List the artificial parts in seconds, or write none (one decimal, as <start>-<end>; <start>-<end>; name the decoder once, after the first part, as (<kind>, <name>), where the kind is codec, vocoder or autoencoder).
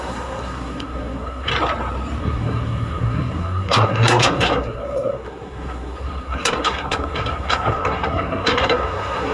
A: 0.0-1.5 (codec, SNAC); 2.2-9.3